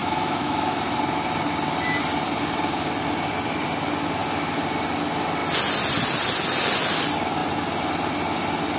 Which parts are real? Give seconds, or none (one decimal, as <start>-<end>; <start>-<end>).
0.8-8.8